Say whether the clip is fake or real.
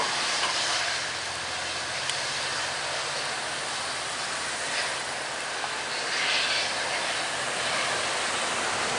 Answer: real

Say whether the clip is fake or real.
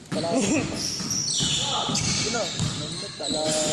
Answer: real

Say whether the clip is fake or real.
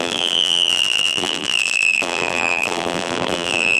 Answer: fake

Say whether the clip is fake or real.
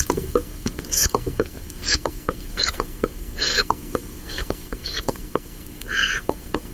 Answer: fake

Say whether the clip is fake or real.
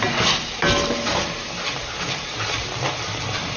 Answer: real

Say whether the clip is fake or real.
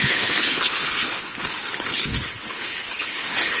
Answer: fake